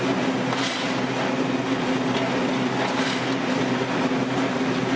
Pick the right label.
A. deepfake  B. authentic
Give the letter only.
B